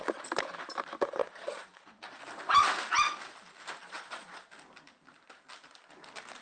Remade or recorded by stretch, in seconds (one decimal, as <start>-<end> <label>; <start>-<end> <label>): 0.0-1.2 recorded; 1.2-2.2 remade; 2.2-3.8 recorded; 3.8-4.5 remade; 4.5-6.4 recorded